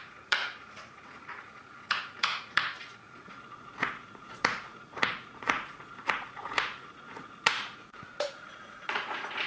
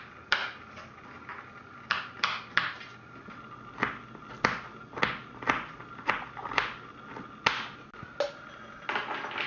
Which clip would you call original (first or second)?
second